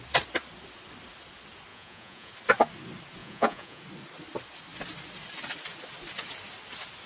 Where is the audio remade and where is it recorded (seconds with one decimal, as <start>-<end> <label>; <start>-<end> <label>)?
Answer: 0.0-1.7 recorded; 1.7-2.3 remade; 2.3-3.2 recorded; 3.2-3.8 remade; 3.8-7.1 recorded